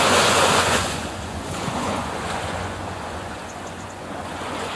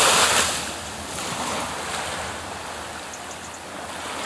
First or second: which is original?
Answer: second